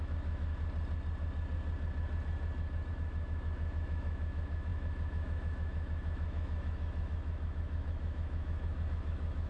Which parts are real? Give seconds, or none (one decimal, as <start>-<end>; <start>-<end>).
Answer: 0.5-2.9